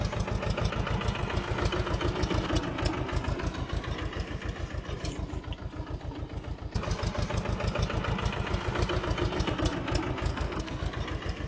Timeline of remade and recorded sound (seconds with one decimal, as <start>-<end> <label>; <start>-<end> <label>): 0.0-10.3 recorded; 10.3-10.8 remade; 10.8-11.5 recorded